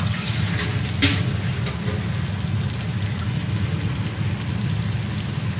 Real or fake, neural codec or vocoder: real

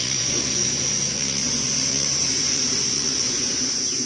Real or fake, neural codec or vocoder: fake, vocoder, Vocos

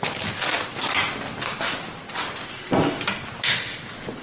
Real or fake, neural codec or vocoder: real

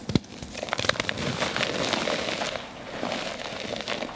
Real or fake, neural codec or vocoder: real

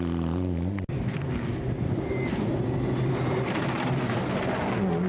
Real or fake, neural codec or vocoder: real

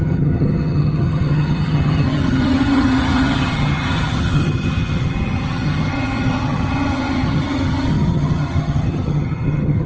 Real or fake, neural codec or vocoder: fake, vocoder, HiFi-GAN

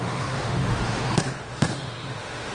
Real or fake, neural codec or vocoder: fake, autoencoder, DAC-VAE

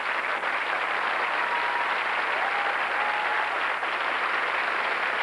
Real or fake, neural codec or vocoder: real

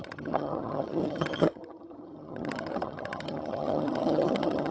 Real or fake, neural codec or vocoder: fake, vocoder, HiFi-GAN